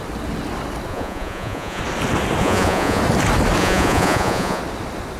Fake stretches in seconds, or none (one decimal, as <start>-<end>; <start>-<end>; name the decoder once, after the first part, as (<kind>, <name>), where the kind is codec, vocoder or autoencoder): 0.9-1.8 (vocoder, Vocos); 2.4-3.0; 3.6-4.6